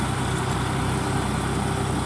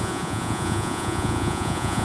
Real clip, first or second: first